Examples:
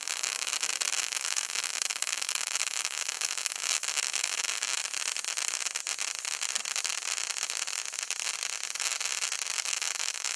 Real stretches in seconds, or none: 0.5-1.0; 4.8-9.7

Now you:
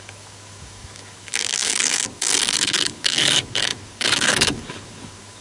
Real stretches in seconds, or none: none

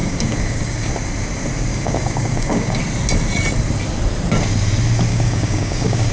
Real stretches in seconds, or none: 0.9-1.7; 2.8-5.1

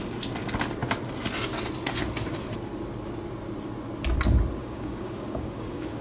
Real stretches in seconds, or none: 0.0-4.6

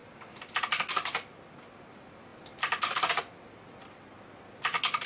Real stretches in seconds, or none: 0.0-5.1